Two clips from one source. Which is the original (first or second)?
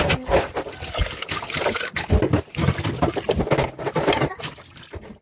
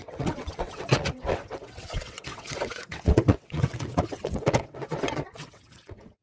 first